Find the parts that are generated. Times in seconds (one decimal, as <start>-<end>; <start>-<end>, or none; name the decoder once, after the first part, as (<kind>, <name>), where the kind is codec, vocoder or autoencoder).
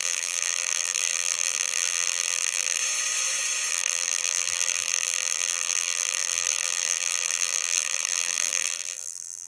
0.0-2.8 (vocoder, BigVGAN v2); 3.7-9.5